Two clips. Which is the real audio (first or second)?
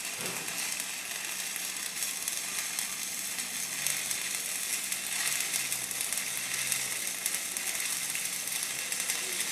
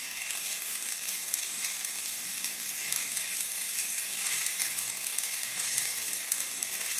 first